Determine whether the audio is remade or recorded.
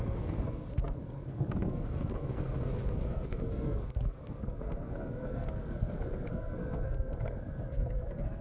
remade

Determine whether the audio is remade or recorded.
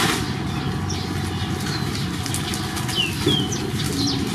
recorded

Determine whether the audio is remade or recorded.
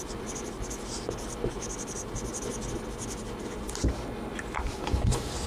recorded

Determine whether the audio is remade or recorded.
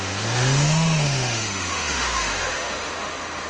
remade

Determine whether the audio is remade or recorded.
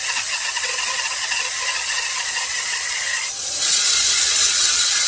remade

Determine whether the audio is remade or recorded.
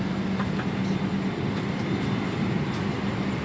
recorded